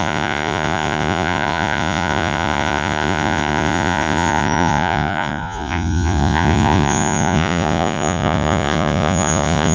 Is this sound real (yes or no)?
no